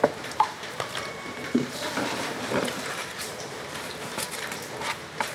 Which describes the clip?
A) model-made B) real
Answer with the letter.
A